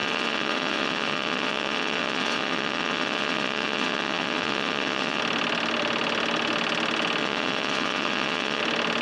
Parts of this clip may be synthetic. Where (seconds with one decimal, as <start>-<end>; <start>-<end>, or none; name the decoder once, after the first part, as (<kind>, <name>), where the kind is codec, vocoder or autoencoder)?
0.0-5.2 (vocoder, WaveNeXt); 7.2-8.6

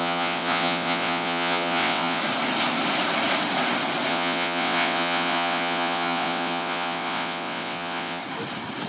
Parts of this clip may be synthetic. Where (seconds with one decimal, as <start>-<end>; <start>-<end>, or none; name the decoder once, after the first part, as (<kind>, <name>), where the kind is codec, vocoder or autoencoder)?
0.0-2.2 (vocoder, WaveNeXt); 4.1-8.2